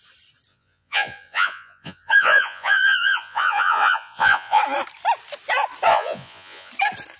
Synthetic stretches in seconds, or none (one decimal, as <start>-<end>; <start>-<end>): 0.5-4.6; 5.9-6.7

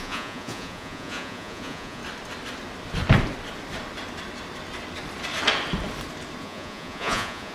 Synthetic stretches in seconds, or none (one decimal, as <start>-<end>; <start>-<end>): 0.0-2.0; 6.4-7.5

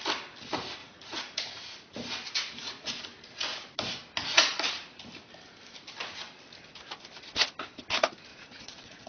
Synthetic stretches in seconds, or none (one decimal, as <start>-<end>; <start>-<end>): 0.8-1.6; 8.3-9.1

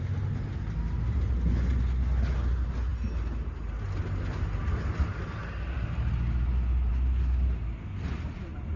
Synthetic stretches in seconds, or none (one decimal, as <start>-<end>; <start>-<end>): none

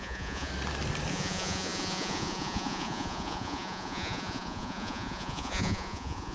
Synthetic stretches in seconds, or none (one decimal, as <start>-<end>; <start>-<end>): 0.0-0.5; 1.1-6.3

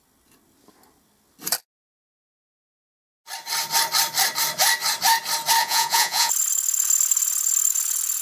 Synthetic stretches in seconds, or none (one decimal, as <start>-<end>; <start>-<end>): 5.6-6.3

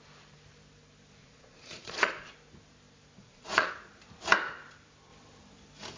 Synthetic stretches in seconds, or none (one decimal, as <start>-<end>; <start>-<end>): 1.2-2.3; 3.2-3.7

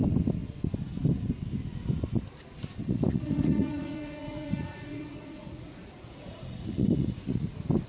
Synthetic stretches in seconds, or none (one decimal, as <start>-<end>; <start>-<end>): 2.8-7.5